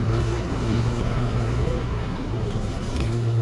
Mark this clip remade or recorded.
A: remade